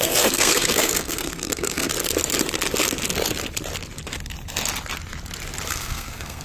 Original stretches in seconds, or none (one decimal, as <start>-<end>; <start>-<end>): 1.9-5.7

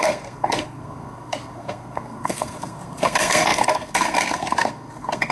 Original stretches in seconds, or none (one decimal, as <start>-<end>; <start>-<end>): none

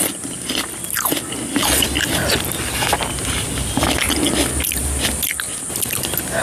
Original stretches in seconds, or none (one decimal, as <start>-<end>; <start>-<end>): 0.0-4.8

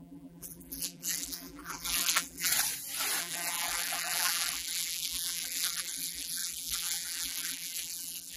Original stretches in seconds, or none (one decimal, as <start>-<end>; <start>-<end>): 2.5-3.2

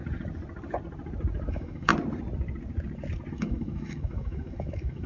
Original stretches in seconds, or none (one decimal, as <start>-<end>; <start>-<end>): 0.0-1.5; 1.9-3.3